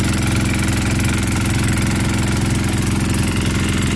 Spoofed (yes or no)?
no